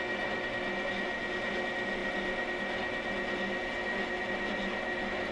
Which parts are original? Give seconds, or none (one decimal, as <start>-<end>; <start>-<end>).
0.0-5.3